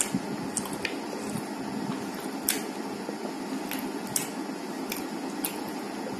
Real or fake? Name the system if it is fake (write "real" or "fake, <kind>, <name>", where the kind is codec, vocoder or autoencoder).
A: real